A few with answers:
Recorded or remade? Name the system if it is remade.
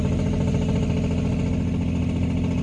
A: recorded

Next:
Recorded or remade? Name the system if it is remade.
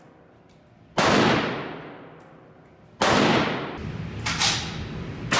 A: recorded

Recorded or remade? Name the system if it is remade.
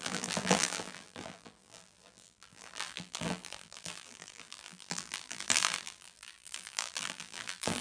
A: remade, vocoder, BigVGAN v2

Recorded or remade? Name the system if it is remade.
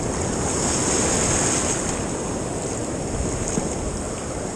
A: recorded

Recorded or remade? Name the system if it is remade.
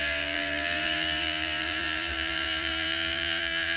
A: remade, vocoder, BigVGAN v2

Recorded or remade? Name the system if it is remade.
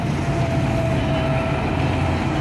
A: recorded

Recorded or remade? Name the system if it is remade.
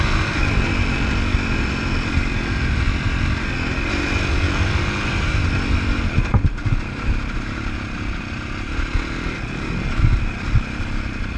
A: recorded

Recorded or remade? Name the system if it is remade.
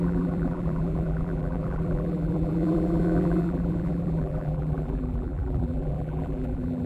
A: remade, vocoder, BigVGAN v2